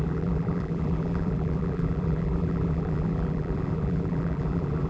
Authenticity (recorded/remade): remade